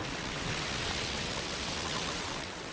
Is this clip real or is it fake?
fake